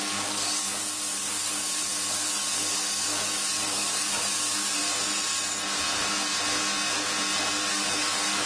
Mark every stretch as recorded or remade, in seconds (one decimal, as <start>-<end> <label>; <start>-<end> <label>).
0.0-4.8 remade; 4.8-7.7 recorded; 7.7-8.5 remade